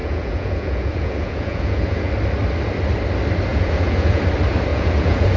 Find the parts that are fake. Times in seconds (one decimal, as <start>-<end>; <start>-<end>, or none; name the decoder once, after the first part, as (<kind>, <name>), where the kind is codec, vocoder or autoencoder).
0.0-2.1 (vocoder, Vocos); 3.5-4.2; 4.7-5.4